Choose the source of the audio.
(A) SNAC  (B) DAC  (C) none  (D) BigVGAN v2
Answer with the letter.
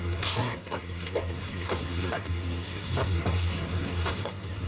A